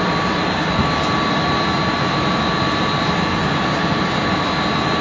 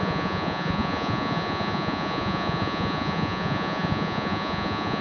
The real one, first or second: first